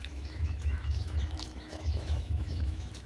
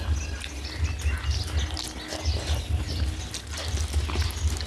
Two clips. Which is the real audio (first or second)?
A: second